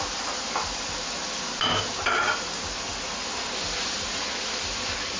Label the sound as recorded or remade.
recorded